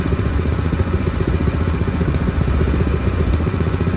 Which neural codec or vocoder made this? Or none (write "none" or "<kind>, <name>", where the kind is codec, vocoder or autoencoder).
vocoder, Vocos